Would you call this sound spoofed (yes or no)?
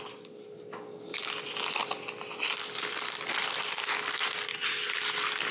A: no